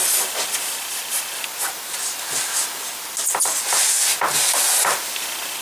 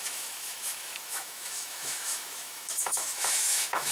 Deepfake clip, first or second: second